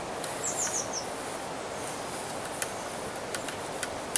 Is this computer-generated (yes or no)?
no